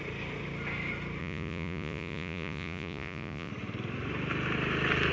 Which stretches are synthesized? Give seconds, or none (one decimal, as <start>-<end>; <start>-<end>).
1.2-3.5